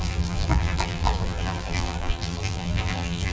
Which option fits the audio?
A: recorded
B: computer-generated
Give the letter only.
B